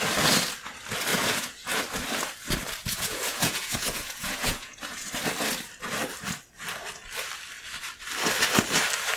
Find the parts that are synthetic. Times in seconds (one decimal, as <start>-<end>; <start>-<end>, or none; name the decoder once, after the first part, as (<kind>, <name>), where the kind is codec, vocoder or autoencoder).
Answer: 1.1-1.8 (vocoder, Vocos); 2.8-5.1